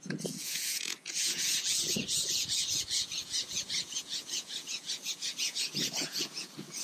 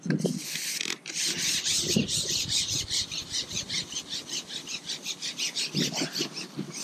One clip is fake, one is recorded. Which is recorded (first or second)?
second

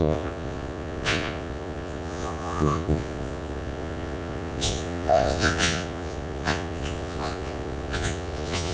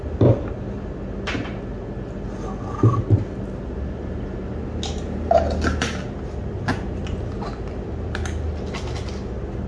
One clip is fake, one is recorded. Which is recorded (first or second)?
second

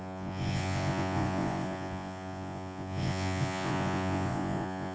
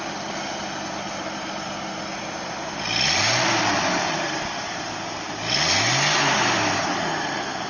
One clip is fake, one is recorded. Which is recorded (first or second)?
second